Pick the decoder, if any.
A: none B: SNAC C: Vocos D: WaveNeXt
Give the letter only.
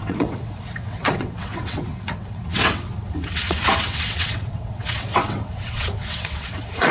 D